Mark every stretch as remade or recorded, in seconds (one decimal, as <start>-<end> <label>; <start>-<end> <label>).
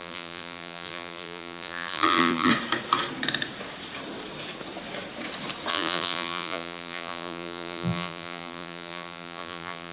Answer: 0.0-2.5 remade; 2.5-5.7 recorded; 5.7-9.9 remade